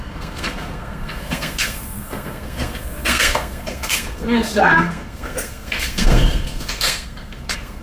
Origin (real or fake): fake